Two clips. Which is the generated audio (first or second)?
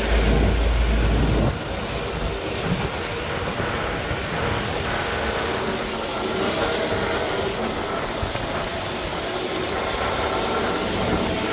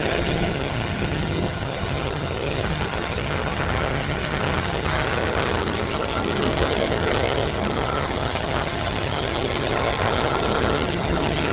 second